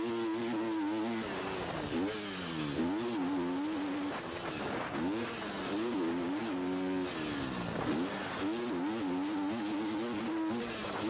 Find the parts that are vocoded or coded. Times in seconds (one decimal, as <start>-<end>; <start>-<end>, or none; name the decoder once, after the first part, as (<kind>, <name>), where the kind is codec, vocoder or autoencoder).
none